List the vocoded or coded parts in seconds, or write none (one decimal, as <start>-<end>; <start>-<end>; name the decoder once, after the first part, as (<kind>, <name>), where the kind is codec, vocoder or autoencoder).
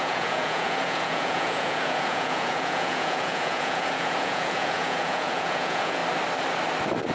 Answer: 0.0-6.0 (vocoder, Vocos)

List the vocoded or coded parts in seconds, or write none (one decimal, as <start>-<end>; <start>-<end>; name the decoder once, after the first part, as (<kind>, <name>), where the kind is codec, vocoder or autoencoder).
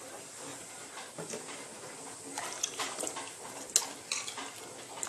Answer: none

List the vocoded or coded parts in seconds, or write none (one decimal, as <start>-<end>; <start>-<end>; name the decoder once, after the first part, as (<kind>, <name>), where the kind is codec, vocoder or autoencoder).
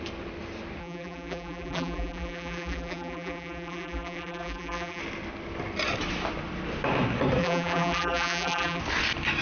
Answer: 0.8-5.0 (vocoder, BigVGAN v2); 7.4-8.8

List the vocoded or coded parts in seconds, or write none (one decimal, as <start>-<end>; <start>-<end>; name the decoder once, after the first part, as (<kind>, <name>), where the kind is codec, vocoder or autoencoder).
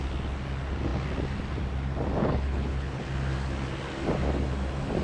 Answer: 2.2-3.0 (codec, HILCodec)